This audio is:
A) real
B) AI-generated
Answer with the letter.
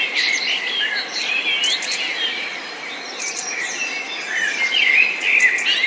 A